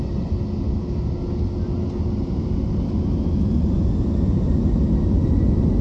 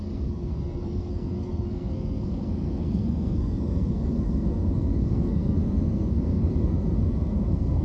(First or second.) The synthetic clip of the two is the second